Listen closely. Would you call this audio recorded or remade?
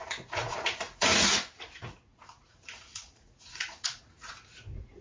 remade